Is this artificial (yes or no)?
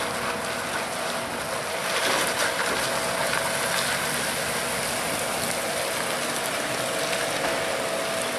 no